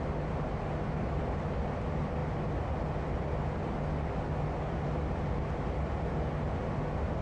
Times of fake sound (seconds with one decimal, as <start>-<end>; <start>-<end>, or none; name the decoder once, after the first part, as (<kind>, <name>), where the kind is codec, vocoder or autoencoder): none